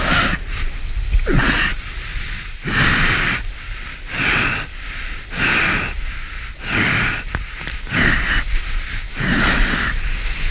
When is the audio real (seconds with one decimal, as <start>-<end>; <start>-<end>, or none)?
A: 0.0-10.5